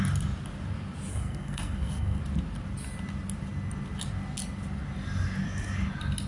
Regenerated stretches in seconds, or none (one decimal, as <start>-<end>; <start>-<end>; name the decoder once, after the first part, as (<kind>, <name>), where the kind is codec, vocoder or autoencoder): 1.1-2.2 (codec, SNAC)